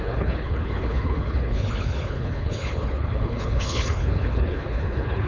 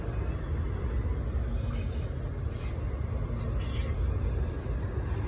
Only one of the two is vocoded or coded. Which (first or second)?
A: first